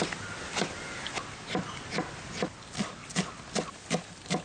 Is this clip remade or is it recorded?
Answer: recorded